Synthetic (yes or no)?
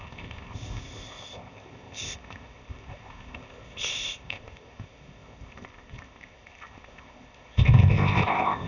yes